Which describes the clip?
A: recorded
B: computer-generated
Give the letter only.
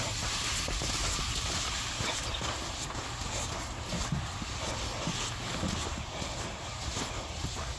A